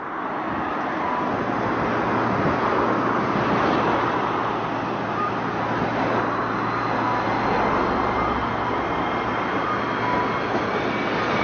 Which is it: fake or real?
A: real